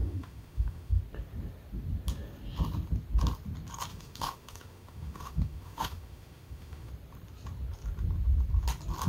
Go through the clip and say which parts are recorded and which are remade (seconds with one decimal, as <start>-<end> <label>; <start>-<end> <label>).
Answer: 0.0-1.0 remade; 1.0-3.9 recorded; 3.9-6.9 remade; 6.9-9.1 recorded